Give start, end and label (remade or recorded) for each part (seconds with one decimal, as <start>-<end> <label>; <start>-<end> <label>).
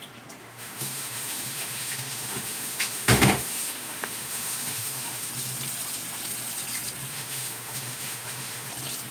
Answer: 0.0-0.4 recorded; 0.4-5.3 remade; 5.3-7.1 recorded; 7.1-8.7 remade; 8.7-9.1 recorded